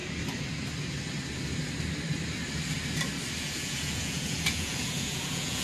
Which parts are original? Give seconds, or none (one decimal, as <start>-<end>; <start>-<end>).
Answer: 0.0-3.4